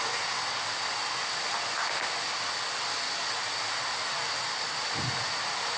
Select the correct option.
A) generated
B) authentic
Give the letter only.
B